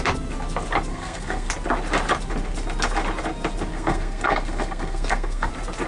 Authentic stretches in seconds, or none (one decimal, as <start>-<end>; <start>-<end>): 0.0-0.9; 1.5-3.7; 5.5-5.9